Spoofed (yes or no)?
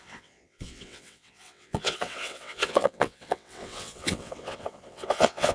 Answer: yes